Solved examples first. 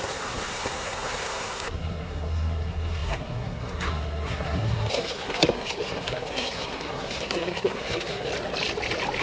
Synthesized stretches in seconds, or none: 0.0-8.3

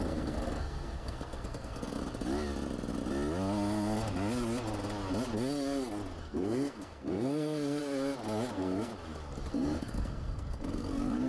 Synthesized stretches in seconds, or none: 0.0-2.0; 6.2-7.8; 8.5-8.9; 9.5-11.3